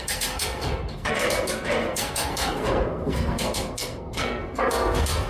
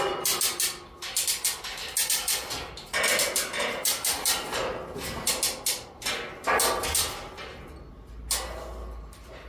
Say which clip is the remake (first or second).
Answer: first